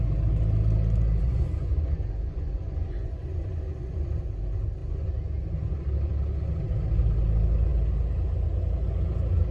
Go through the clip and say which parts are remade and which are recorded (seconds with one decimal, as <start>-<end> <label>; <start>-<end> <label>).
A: 0.0-1.2 recorded; 1.2-4.1 remade; 4.1-9.5 recorded